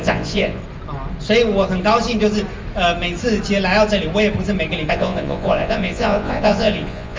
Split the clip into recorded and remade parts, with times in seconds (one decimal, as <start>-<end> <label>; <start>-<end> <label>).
0.0-0.6 remade; 0.6-4.9 recorded; 4.9-7.2 remade

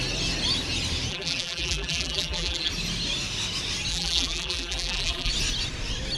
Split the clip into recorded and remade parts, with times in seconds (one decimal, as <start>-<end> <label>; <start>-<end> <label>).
0.0-1.1 recorded; 1.1-2.7 remade; 2.7-3.9 recorded; 3.9-5.3 remade; 5.3-6.2 recorded

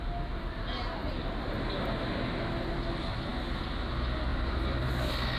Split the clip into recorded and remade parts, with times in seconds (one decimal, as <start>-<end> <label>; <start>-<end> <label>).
0.0-1.0 recorded; 1.0-1.6 remade; 1.6-4.3 recorded; 4.3-4.9 remade; 4.9-5.4 recorded

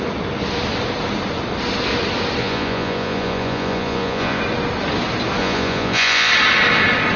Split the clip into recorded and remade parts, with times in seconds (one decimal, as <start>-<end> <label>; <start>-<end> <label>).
0.0-2.4 recorded; 2.4-4.4 remade; 4.4-5.4 recorded; 5.4-6.3 remade; 6.3-7.2 recorded

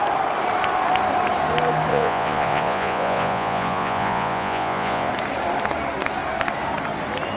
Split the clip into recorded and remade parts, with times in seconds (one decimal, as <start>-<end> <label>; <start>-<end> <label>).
0.0-1.9 recorded; 1.9-5.1 remade; 5.1-7.4 recorded

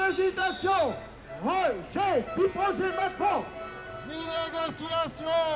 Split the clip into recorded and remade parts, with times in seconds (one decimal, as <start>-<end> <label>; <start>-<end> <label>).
0.0-5.6 recorded

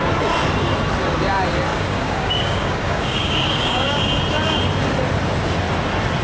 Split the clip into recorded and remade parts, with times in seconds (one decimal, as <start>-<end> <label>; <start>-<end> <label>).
0.0-1.7 recorded; 1.7-4.0 remade; 4.0-6.2 recorded